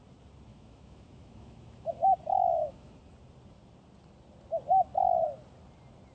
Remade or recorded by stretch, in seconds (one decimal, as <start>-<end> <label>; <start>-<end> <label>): 0.0-0.5 recorded; 0.5-1.9 remade; 1.9-2.3 recorded; 2.3-3.0 remade; 3.0-6.1 recorded

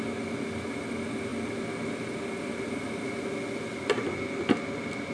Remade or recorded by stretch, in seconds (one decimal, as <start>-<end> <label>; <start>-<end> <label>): 0.0-5.1 recorded

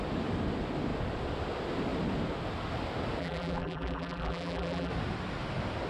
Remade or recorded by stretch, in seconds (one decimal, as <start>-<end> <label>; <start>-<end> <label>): 0.0-3.2 recorded; 3.2-4.9 remade; 4.9-5.9 recorded

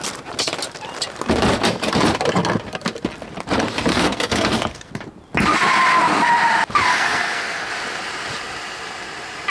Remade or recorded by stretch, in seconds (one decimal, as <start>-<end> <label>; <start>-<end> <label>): 0.0-3.9 recorded; 3.9-4.9 remade; 4.9-6.9 recorded; 6.9-7.7 remade; 7.7-9.5 recorded

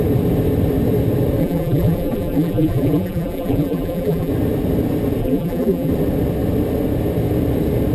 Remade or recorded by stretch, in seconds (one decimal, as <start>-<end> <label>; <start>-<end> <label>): 0.0-1.4 recorded; 1.4-4.3 remade; 4.3-5.2 recorded; 5.2-5.9 remade; 5.9-7.9 recorded